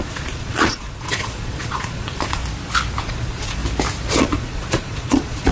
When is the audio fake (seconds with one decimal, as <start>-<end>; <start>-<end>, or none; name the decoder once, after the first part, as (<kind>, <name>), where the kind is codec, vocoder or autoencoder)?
0.0-2.4 (vocoder, Vocos); 3.0-3.6; 4.2-5.5